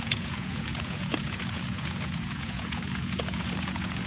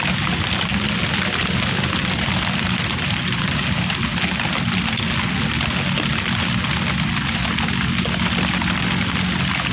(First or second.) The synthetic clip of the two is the first